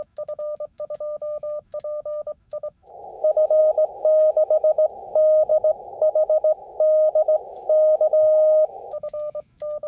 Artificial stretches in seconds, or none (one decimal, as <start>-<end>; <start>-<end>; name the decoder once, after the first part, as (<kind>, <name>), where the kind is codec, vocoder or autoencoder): 0.0-9.9 (autoencoder, DAC-VAE)